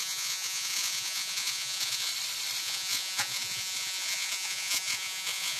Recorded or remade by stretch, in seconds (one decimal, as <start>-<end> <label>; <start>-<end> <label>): 0.0-2.1 remade; 2.1-2.6 recorded; 2.6-5.6 remade